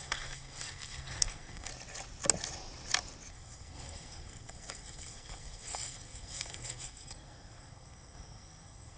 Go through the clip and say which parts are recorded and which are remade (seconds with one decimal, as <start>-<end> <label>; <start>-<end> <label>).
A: 0.0-1.7 remade; 1.7-3.3 recorded; 3.3-9.0 remade